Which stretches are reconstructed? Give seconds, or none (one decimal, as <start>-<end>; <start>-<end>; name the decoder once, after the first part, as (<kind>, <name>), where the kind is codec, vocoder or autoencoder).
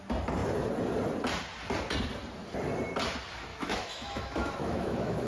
3.5-5.3 (autoencoder, DAC-VAE)